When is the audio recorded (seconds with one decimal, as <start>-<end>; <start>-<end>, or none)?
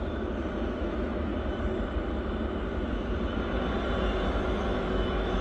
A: 1.3-4.4